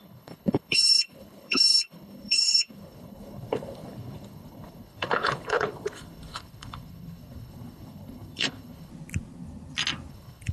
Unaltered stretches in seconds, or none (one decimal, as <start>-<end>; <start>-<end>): 8.9-10.1